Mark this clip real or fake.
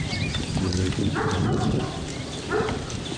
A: real